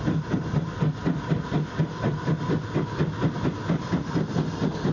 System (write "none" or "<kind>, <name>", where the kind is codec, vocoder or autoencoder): none